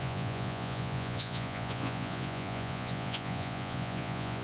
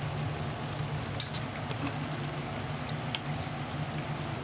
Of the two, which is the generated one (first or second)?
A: first